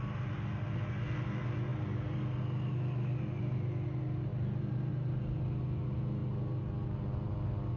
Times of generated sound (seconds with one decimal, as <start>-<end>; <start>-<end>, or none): none